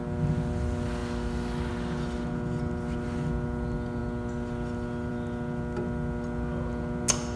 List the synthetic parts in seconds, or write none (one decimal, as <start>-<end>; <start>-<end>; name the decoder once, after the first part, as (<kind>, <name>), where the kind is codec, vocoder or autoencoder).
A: none